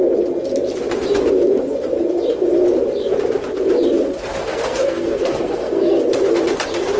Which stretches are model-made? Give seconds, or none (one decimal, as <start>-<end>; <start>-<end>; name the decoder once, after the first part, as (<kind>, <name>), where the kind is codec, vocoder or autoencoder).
4.4-6.0 (codec, SNAC)